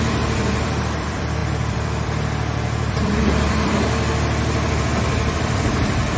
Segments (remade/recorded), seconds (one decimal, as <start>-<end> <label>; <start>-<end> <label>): 0.0-3.7 remade; 3.7-4.7 recorded; 4.7-6.2 remade